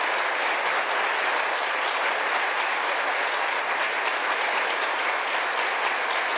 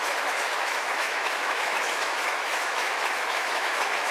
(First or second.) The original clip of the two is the first